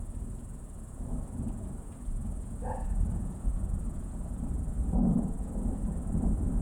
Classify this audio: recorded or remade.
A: remade